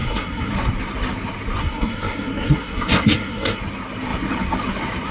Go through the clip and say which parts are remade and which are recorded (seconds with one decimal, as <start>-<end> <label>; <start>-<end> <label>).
0.0-0.5 remade; 0.5-1.6 recorded; 1.6-3.6 remade; 3.6-5.1 recorded